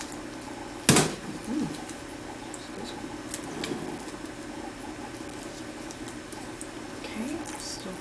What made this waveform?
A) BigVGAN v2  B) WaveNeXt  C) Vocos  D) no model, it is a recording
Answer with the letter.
D